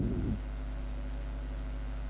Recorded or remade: recorded